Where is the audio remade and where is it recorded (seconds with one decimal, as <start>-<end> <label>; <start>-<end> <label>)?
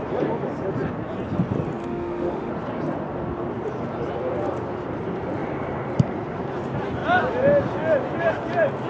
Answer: 0.0-1.8 recorded; 1.8-2.5 remade; 2.5-8.9 recorded